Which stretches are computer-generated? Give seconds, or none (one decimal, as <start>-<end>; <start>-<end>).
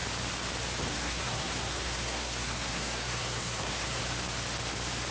0.9-4.0